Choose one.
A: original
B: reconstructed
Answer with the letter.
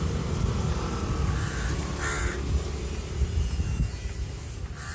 A